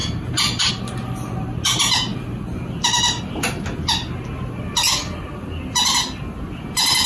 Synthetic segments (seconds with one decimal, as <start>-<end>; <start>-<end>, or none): 0.0-0.7